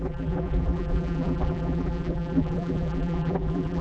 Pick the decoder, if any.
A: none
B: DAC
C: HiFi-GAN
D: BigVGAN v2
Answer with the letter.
D